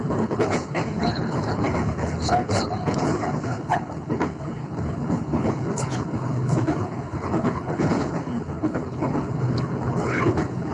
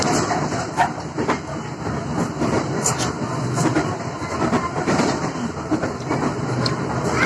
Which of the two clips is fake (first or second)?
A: first